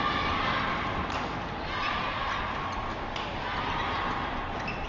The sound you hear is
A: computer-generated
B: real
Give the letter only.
B